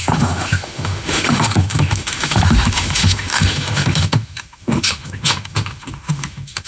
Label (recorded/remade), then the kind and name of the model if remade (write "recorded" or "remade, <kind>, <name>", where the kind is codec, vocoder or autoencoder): remade, autoencoder, DAC-VAE